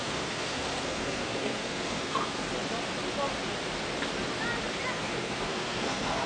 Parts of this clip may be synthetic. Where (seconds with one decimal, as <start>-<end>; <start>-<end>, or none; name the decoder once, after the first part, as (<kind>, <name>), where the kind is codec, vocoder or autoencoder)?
0.0-2.5 (codec, SNAC); 4.9-6.3